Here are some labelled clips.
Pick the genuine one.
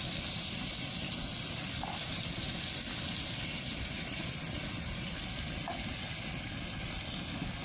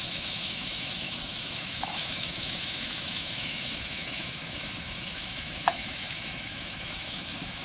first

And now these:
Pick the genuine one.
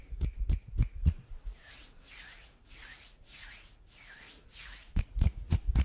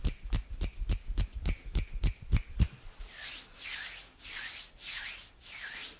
second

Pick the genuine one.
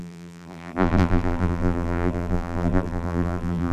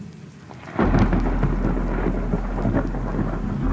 second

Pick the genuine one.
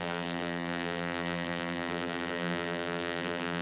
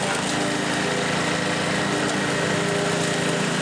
second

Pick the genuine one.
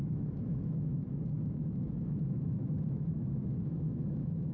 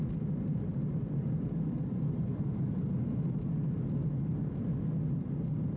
second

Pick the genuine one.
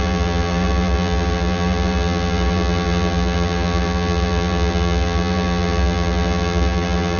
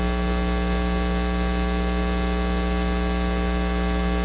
second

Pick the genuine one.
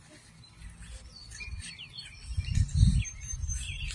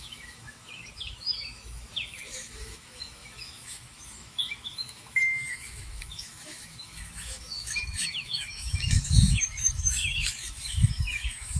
first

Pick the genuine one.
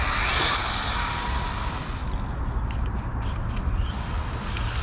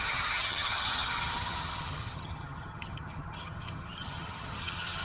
first